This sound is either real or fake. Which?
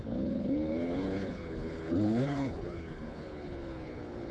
fake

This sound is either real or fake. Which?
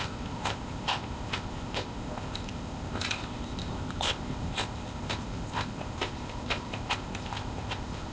fake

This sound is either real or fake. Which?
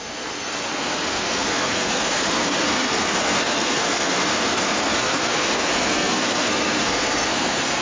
fake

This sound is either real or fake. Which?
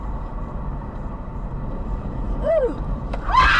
fake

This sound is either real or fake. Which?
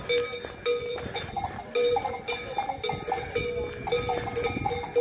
real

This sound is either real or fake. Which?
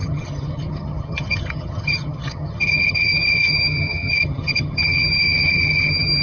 fake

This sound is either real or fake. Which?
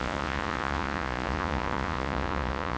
fake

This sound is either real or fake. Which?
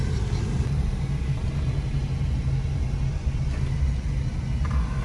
real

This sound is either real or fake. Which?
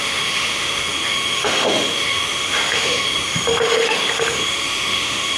fake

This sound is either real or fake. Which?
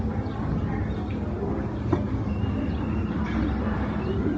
real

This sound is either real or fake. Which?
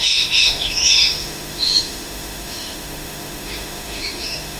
fake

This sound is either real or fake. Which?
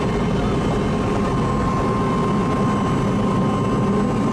real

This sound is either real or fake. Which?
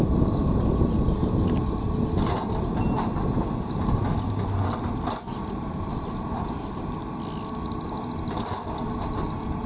real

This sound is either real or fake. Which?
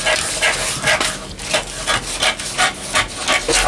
real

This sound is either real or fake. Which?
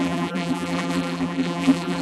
fake